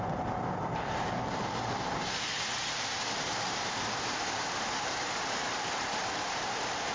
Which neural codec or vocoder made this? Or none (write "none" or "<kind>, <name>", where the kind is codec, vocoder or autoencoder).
vocoder, BigVGAN v2